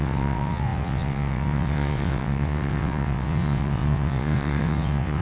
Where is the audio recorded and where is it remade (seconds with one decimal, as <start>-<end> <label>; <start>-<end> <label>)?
0.0-5.2 remade